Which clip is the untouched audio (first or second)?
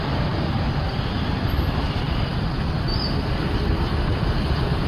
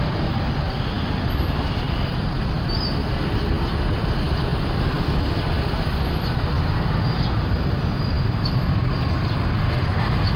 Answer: second